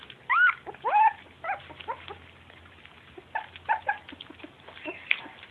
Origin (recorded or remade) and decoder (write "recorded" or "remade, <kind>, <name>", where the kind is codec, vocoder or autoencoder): recorded